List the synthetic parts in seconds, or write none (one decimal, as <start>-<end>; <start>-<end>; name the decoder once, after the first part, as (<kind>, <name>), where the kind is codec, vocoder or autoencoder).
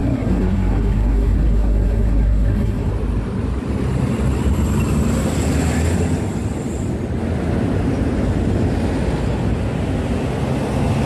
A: 0.0-2.9 (codec, SNAC)